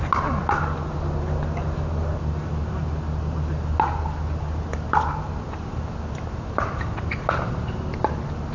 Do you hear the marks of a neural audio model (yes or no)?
no